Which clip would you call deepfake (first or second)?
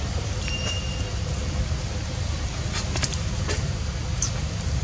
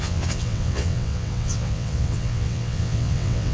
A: second